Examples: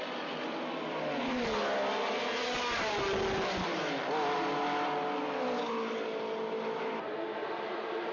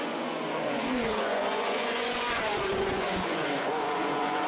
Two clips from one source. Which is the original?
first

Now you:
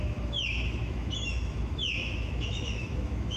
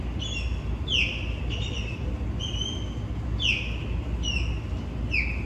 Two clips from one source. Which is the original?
second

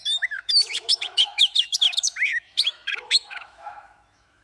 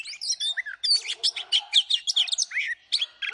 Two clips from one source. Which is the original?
second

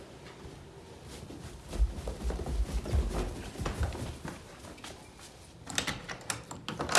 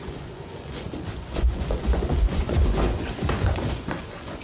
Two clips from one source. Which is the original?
first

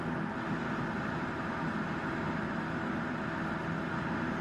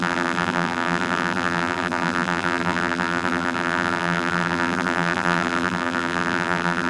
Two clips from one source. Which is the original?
first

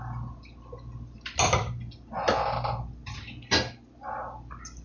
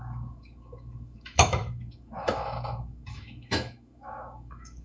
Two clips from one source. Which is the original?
first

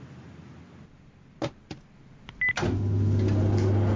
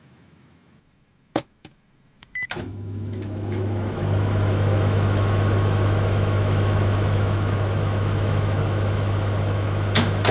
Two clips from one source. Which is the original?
first